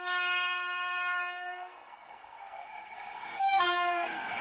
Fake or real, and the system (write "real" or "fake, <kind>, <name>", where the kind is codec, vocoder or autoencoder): fake, codec, SNAC